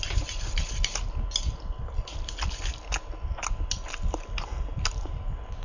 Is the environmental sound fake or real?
real